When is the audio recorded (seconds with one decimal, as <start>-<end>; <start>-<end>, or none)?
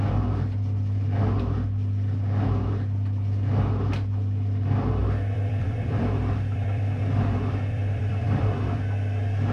0.0-5.0; 8.8-9.5